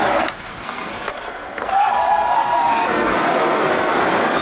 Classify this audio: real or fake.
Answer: fake